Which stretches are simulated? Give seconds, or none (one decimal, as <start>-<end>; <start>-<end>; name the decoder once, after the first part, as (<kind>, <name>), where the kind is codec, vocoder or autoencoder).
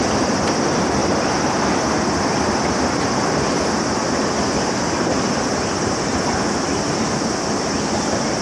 none